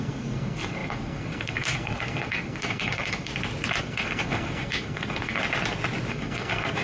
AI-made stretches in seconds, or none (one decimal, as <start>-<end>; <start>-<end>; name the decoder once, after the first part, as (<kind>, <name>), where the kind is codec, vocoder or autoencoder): 0.0-3.3 (codec, SNAC); 3.8-5.4; 6.1-6.8